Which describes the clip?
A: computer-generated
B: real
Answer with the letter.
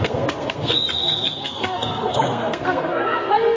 A